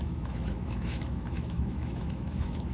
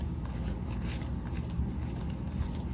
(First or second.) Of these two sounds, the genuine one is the second